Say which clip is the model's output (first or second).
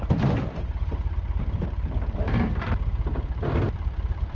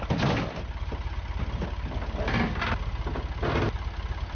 first